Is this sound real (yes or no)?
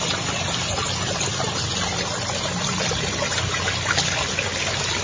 yes